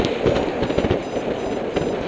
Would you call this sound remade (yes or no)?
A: no